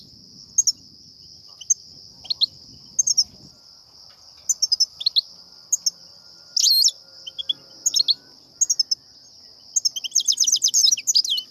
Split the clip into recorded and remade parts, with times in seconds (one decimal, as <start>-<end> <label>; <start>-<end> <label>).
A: 0.0-11.5 recorded